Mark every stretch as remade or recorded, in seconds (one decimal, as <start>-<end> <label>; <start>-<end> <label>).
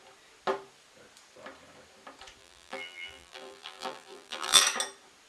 0.0-2.4 recorded; 2.4-4.6 remade; 4.6-5.3 recorded